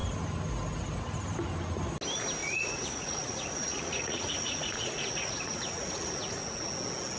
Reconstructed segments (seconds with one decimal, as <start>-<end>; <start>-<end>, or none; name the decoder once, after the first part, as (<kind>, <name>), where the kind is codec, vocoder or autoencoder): 2.4-6.7 (vocoder, Vocos)